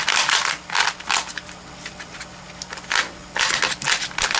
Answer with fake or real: real